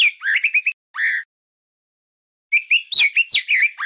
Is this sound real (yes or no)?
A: yes